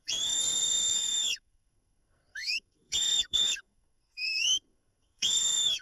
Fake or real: fake